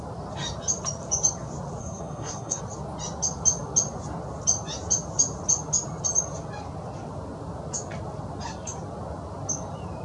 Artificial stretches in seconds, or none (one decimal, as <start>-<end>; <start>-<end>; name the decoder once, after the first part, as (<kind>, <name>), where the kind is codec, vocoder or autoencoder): 1.8-2.6 (codec, SNAC)